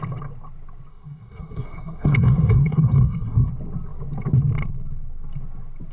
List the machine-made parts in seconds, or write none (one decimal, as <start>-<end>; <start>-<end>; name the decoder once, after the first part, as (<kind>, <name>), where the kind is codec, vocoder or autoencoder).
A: 0.9-3.5 (codec, SNAC)